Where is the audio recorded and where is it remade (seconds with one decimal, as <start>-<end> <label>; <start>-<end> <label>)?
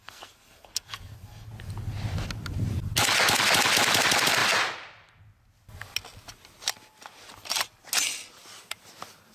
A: 0.0-1.5 remade; 1.5-9.3 recorded